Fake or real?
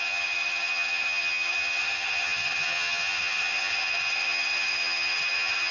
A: fake